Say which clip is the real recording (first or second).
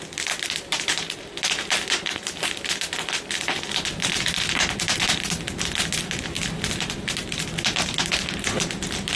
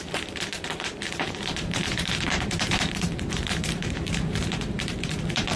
first